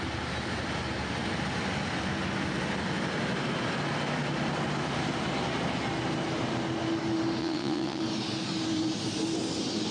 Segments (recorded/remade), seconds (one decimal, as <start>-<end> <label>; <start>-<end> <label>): 0.0-7.4 recorded; 7.4-8.0 remade; 8.0-9.9 recorded